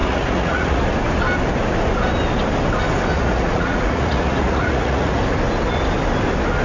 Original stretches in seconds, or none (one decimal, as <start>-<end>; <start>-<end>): 0.8-3.1; 5.2-6.6